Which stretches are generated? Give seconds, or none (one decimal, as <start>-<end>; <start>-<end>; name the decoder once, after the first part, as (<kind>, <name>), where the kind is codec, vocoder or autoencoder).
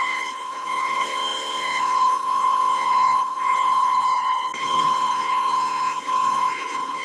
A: 0.0-7.0 (codec, HILCodec)